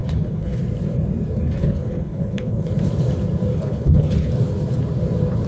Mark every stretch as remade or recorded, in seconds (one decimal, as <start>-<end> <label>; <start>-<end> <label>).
0.0-0.6 remade; 0.6-1.6 recorded; 1.6-2.7 remade; 2.7-3.5 recorded; 3.5-4.3 remade; 4.3-5.5 recorded